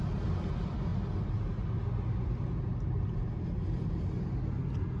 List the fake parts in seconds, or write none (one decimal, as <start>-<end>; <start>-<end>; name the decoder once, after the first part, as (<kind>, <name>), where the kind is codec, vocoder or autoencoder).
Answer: none